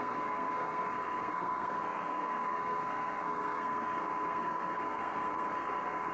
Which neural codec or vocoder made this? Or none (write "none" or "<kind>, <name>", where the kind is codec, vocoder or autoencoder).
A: codec, SNAC